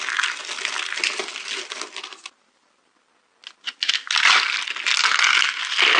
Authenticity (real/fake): real